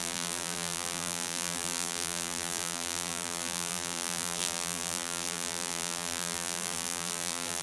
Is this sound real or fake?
fake